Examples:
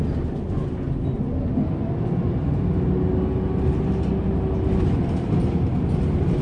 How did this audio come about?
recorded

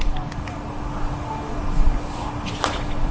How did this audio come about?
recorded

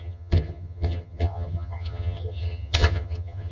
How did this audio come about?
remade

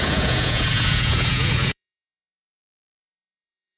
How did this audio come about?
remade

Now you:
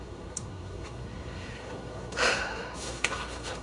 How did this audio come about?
remade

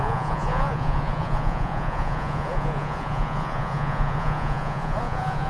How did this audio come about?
remade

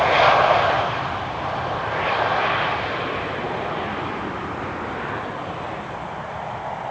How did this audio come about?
recorded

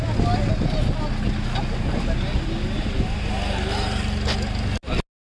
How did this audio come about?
recorded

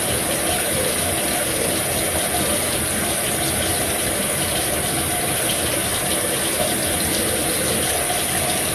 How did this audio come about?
recorded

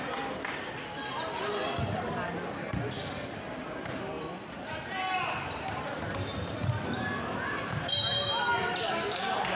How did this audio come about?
recorded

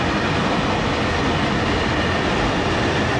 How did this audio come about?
recorded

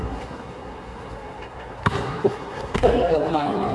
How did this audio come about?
remade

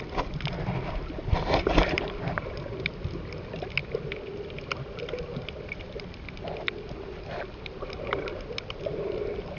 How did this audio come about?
recorded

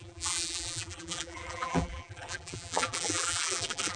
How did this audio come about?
remade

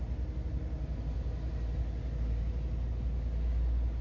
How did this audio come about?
recorded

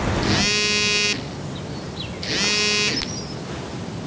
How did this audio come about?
recorded